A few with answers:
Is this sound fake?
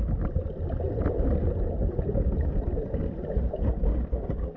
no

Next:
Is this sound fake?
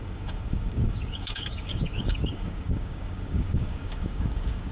yes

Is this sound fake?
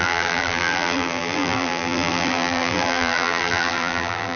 yes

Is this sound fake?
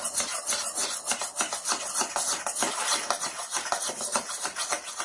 no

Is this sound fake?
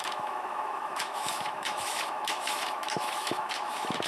yes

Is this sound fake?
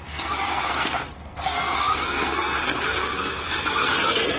yes